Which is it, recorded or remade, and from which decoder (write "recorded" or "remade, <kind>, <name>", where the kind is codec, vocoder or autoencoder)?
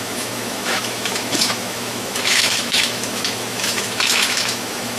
remade, autoencoder, DAC-VAE